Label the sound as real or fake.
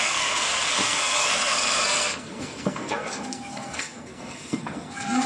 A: fake